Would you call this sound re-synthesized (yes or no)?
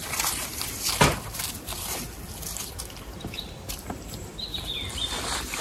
yes